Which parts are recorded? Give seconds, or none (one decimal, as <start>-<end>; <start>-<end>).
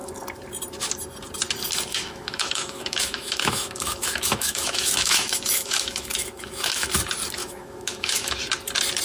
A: 0.0-1.9; 6.9-7.4; 8.4-9.0